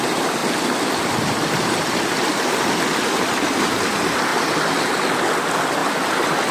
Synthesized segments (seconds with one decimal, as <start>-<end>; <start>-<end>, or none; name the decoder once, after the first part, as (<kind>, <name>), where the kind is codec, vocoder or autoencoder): 0.4-3.2 (vocoder, BigVGAN v2)